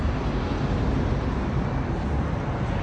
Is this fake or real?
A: real